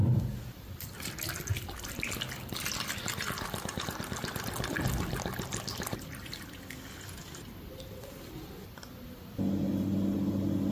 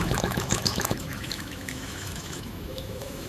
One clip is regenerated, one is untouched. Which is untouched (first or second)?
first